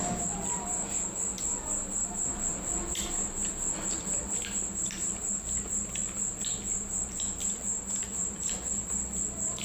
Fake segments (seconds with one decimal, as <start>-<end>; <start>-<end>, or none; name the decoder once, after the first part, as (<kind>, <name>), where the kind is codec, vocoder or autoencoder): 8.0-8.6 (vocoder, BigVGAN v2)